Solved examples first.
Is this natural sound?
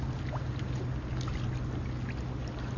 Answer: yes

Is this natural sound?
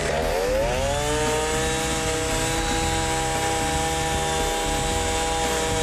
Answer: yes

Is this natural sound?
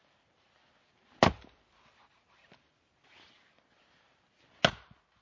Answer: yes